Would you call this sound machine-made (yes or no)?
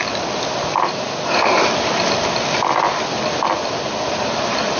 no